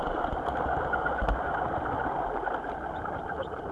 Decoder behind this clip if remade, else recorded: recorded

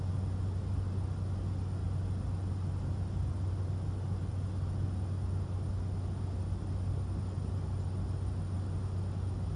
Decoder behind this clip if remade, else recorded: recorded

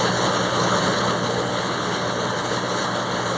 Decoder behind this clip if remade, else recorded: remade, codec, HILCodec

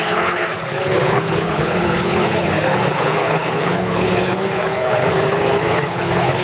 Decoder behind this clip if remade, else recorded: remade, codec, HILCodec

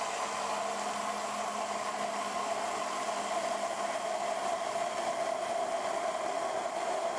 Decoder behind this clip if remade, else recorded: recorded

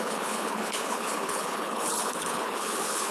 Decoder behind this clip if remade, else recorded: remade, codec, HILCodec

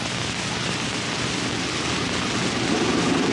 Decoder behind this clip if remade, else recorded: recorded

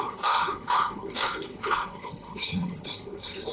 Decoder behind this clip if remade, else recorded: remade, codec, HILCodec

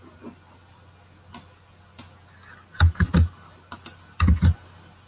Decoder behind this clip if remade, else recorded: recorded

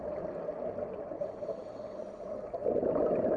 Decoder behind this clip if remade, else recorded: recorded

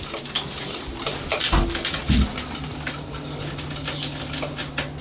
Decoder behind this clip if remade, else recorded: recorded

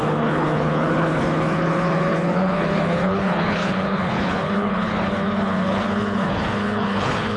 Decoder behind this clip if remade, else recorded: remade, codec, HILCodec